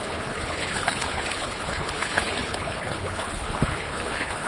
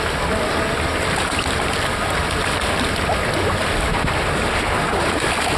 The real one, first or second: second